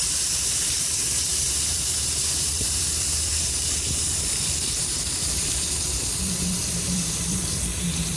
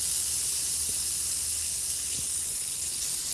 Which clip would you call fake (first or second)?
first